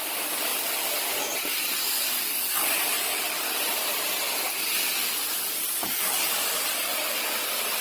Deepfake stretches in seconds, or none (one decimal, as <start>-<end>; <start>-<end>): none